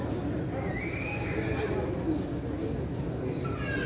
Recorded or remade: recorded